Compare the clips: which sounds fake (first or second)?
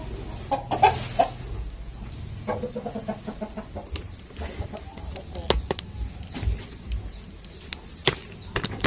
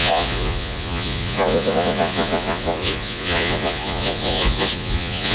second